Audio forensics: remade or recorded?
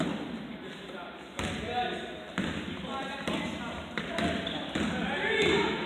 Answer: recorded